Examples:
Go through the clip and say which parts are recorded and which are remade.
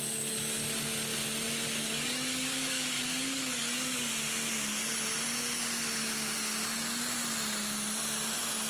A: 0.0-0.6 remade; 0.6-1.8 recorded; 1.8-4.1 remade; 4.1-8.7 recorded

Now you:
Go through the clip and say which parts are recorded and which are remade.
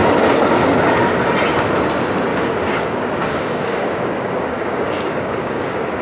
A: 0.0-2.3 recorded; 2.3-6.0 remade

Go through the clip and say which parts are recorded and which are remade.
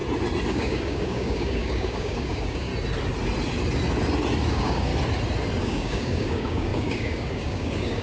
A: 0.0-0.5 recorded; 0.5-2.7 remade; 2.7-4.5 recorded; 4.5-4.9 remade; 4.9-5.6 recorded; 5.6-8.0 remade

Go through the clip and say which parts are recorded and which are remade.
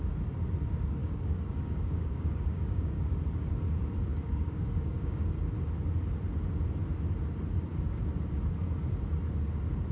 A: 0.0-1.0 recorded; 1.0-3.1 remade; 3.1-4.1 recorded; 4.1-5.3 remade; 5.3-9.9 recorded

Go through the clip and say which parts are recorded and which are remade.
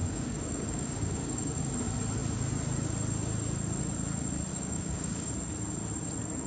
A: 0.0-1.6 remade; 1.6-4.5 recorded; 4.5-5.3 remade; 5.3-6.5 recorded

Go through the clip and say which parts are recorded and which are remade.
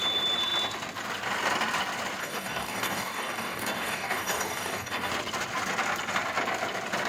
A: 0.0-2.2 recorded; 2.2-5.1 remade; 5.1-7.1 recorded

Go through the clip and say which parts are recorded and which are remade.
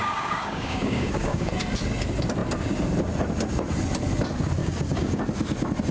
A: 0.0-1.5 remade; 1.5-4.6 recorded; 4.6-5.2 remade; 5.2-5.9 recorded